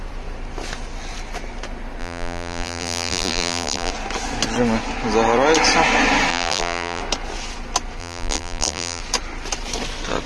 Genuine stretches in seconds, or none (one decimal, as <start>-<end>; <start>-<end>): 0.0-2.0; 3.9-6.3; 7.0-8.0; 9.0-10.3